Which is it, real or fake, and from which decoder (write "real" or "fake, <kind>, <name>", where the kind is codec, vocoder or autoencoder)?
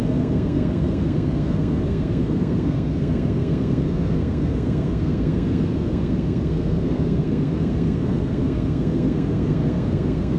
fake, codec, SNAC